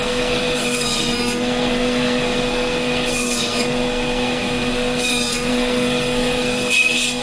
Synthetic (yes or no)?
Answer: yes